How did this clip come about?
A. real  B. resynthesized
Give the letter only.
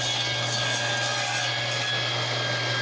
A